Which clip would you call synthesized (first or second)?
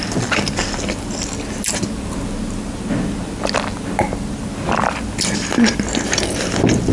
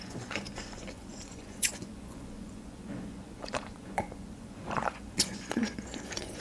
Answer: second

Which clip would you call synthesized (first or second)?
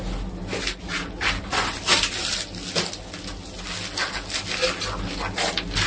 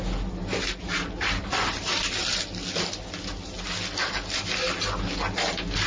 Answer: second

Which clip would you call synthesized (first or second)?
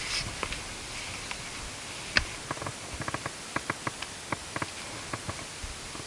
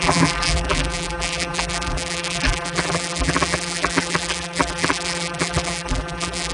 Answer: second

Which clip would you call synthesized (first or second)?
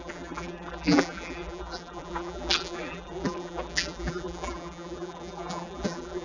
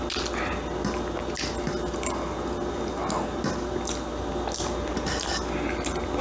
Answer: first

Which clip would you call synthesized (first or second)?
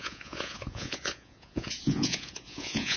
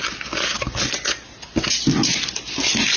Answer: first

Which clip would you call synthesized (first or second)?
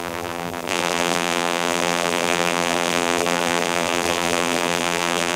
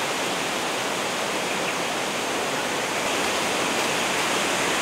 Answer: first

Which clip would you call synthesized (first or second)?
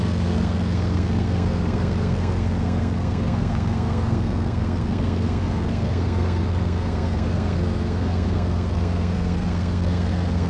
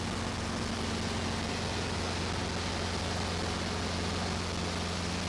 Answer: first